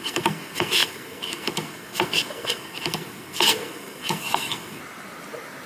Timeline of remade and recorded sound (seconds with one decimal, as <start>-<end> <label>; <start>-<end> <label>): 0.0-4.8 remade; 4.8-5.7 recorded